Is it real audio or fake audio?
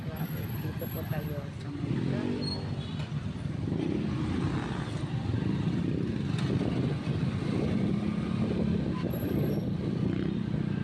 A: real